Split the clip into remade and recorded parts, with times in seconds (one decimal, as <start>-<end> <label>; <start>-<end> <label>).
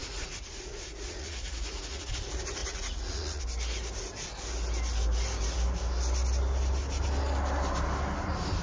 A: 0.0-2.1 remade; 2.1-2.6 recorded; 2.6-3.4 remade; 3.4-8.6 recorded